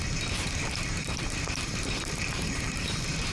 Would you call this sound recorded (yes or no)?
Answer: no